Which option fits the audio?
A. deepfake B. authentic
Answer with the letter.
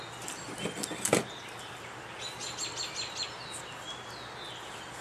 B